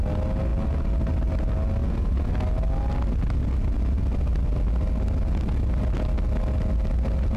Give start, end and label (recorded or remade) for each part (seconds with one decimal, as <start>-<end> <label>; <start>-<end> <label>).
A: 0.0-1.8 recorded; 1.8-2.3 remade; 2.3-7.4 recorded